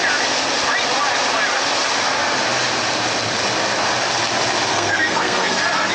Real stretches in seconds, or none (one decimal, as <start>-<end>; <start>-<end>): 0.0-4.7